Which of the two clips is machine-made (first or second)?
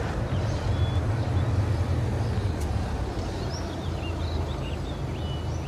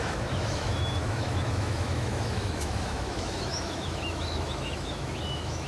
second